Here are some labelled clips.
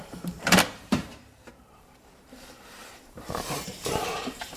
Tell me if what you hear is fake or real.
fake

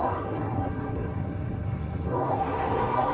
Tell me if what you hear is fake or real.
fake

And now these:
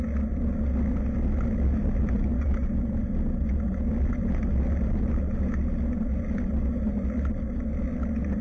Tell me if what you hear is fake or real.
real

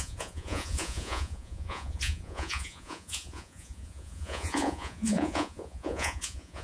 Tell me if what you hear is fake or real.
fake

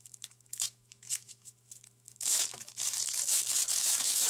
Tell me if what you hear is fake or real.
fake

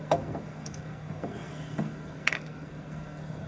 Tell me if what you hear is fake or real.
fake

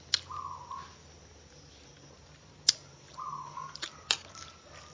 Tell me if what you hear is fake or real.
real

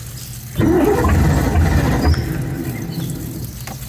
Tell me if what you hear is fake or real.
real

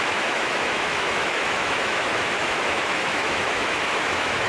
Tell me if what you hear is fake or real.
fake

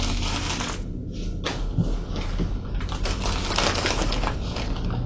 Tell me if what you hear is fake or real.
real